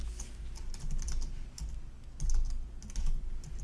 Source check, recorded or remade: recorded